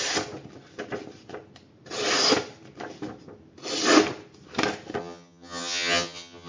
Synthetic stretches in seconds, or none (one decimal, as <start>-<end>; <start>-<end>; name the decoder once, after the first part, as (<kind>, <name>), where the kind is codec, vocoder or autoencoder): 5.0-6.5 (vocoder, HiFi-GAN)